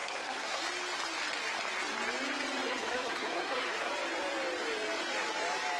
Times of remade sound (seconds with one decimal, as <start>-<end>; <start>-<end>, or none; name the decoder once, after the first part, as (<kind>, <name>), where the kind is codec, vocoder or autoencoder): 0.0-0.6 (codec, SNAC); 2.7-3.9